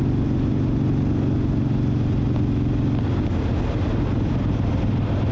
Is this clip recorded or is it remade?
recorded